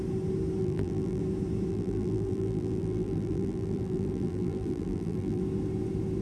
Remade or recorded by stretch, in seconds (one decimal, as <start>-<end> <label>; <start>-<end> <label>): 0.0-0.6 recorded; 0.6-1.2 remade; 1.2-1.7 recorded; 1.7-5.4 remade; 5.4-6.2 recorded